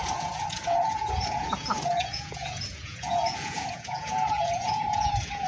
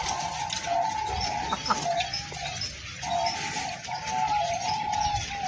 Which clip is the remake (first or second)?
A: first